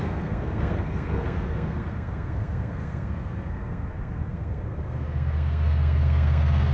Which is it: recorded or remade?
remade